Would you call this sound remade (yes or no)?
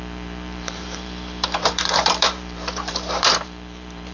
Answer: yes